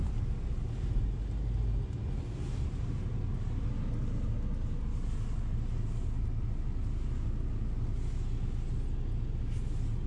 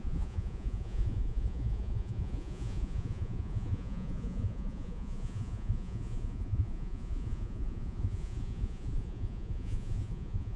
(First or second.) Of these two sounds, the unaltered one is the first